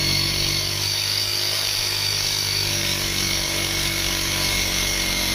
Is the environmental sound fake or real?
fake